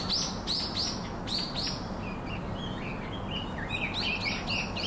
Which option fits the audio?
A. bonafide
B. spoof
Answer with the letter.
A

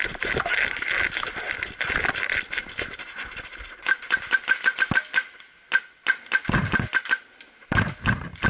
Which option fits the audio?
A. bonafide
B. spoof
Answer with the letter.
A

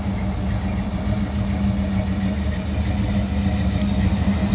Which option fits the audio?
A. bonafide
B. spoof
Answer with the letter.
A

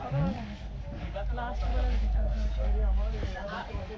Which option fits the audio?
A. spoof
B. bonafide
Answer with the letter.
A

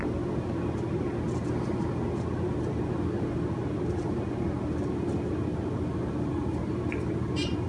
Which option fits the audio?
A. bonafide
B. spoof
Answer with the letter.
A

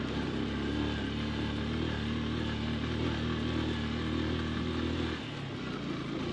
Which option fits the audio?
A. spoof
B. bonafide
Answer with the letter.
B